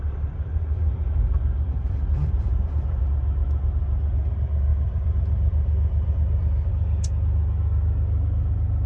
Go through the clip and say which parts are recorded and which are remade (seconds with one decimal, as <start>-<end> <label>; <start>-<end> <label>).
0.0-1.8 recorded; 1.8-3.0 remade; 3.0-4.7 recorded; 4.7-6.7 remade; 6.7-8.9 recorded